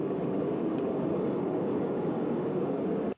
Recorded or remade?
remade